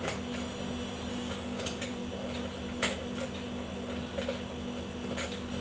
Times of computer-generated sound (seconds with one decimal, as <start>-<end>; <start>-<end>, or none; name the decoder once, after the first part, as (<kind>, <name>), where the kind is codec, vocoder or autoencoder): 1.1-1.6 (codec, DAC)